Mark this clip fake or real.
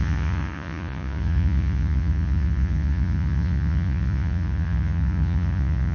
fake